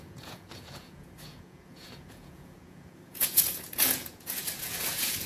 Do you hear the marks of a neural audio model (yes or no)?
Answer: yes